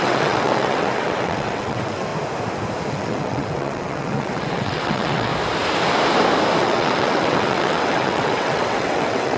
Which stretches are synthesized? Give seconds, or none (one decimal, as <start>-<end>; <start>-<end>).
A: 0.0-2.1; 2.9-5.3; 6.6-9.4